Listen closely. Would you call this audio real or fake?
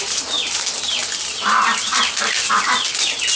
real